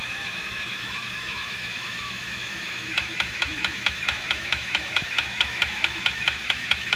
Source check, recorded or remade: remade